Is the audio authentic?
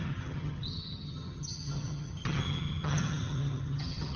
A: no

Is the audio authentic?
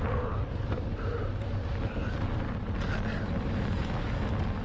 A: yes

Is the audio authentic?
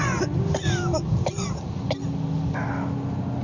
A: yes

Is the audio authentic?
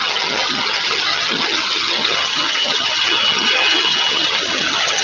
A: no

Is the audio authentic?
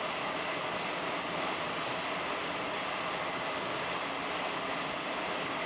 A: yes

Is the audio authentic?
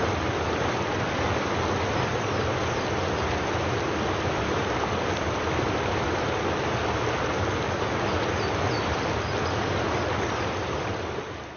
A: yes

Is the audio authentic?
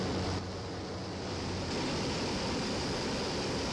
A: no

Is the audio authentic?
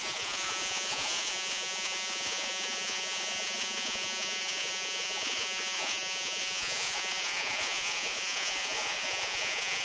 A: no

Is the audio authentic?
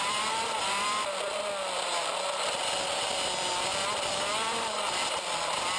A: yes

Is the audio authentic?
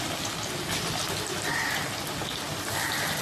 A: yes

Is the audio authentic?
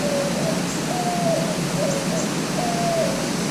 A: yes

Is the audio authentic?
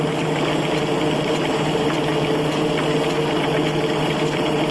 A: yes